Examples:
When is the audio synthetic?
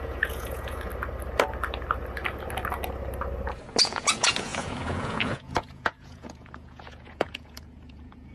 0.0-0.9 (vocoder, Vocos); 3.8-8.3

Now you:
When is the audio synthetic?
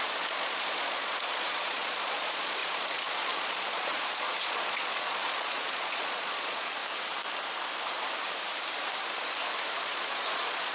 0.0-6.8 (vocoder, Vocos); 9.7-10.7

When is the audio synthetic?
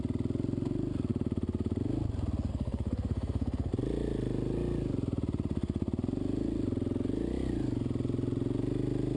2.5-3.7 (codec, SNAC)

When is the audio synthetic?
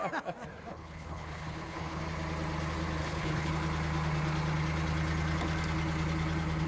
0.7-2.0 (codec, HILCodec); 3.0-3.5